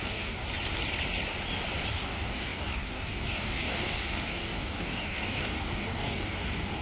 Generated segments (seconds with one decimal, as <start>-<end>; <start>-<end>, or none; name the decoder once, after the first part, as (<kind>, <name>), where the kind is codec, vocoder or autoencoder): 0.0-0.4 (codec, DAC); 1.9-6.8